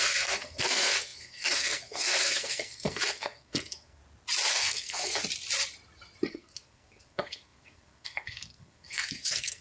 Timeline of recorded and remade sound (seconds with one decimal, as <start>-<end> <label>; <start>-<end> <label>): 0.0-4.0 remade; 4.0-4.5 recorded; 4.5-5.2 remade; 5.2-6.3 recorded; 6.3-9.6 remade